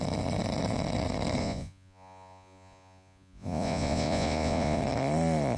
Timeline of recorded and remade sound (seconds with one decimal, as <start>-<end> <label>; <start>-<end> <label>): 0.0-1.4 recorded; 1.4-4.8 remade; 4.8-5.6 recorded